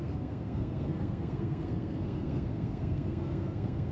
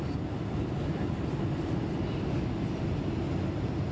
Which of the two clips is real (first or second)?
second